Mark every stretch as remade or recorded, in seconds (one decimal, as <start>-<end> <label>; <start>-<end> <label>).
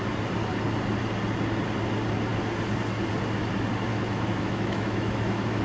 0.0-3.9 recorded; 3.9-5.6 remade